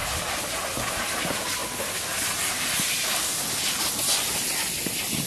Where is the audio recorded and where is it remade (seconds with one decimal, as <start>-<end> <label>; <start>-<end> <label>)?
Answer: 0.0-5.3 recorded